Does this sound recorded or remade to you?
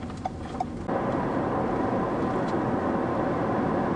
recorded